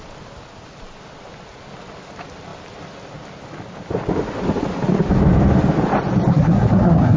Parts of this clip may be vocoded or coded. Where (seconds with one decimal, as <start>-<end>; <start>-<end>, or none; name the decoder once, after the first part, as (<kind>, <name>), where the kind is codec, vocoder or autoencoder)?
6.3-7.2 (codec, SNAC)